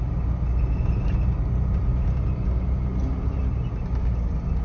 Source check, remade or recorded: recorded